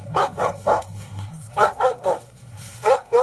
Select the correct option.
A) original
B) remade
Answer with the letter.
B